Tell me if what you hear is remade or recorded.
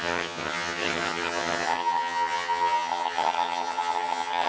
remade